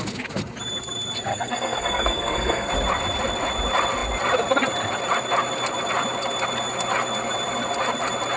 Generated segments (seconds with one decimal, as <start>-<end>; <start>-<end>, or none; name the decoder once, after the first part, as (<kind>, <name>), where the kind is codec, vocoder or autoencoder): 1.3-2.7 (codec, SNAC)